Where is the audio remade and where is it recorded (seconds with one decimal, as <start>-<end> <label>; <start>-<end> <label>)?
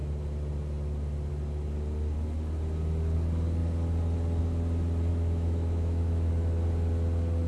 0.0-5.1 recorded; 5.1-6.3 remade; 6.3-7.5 recorded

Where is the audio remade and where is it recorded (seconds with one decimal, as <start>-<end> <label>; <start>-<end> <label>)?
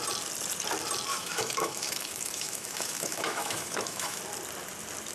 0.0-1.1 recorded; 1.1-4.2 remade; 4.2-5.1 recorded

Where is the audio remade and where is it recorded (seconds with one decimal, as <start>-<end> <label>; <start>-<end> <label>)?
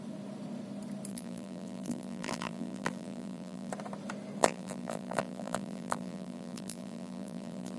0.0-1.1 recorded; 1.1-3.7 remade; 3.7-4.4 recorded; 4.4-7.8 remade